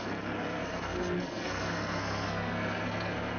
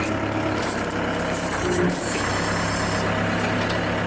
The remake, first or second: first